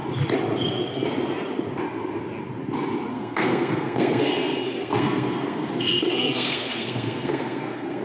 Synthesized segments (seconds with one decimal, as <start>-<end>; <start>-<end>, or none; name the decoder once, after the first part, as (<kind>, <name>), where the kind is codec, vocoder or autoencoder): 3.1-8.0 (codec, SNAC)